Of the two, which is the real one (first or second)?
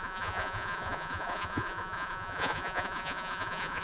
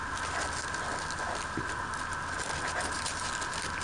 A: second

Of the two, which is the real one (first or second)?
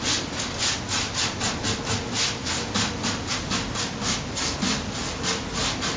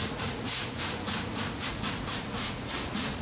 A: first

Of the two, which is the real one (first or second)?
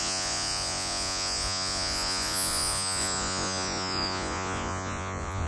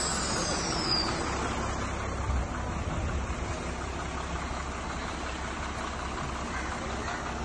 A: second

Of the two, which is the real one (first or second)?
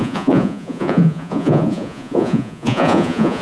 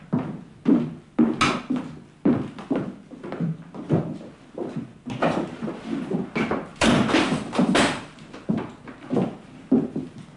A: second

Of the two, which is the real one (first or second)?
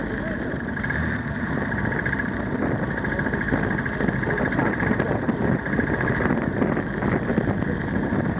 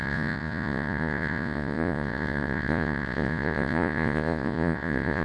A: first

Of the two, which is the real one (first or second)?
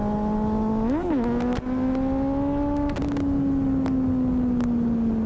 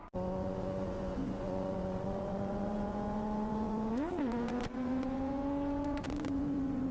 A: first